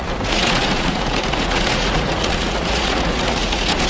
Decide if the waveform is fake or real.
fake